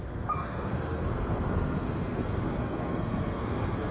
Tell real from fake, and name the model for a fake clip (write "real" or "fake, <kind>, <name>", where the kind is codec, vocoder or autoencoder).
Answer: fake, codec, SNAC